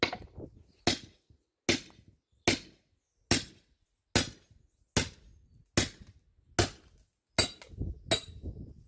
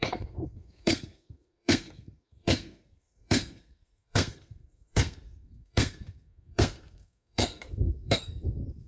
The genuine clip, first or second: first